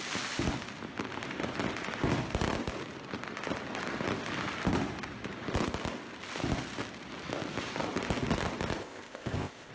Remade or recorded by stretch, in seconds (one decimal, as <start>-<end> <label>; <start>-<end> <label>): 0.0-8.8 recorded; 8.8-9.7 remade